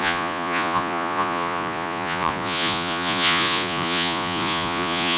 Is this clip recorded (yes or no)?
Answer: no